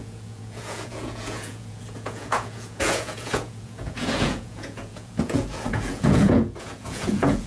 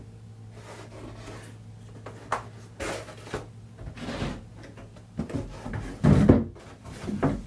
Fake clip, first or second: first